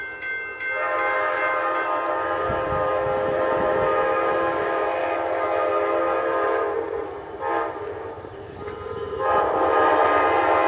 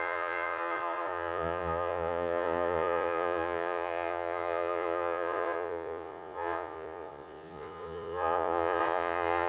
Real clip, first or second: first